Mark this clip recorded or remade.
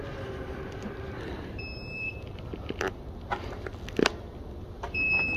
remade